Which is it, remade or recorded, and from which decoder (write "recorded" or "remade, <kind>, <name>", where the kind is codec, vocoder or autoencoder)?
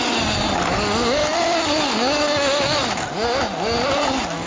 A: recorded